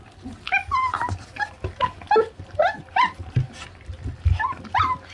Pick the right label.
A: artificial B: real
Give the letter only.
B